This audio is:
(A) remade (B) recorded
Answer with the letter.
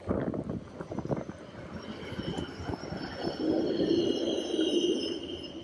B